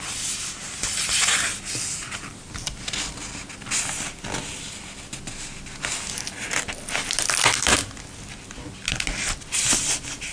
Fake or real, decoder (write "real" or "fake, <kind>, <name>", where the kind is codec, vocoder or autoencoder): real